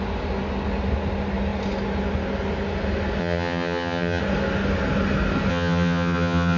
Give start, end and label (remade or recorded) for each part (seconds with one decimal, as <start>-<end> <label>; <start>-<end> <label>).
0.0-3.2 recorded; 3.2-4.2 remade; 4.2-5.5 recorded; 5.5-6.6 remade